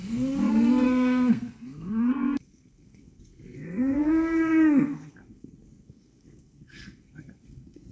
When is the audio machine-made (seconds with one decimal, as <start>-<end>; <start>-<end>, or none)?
0.0-7.9